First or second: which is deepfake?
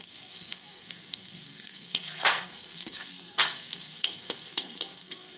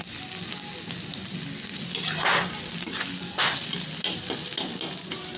first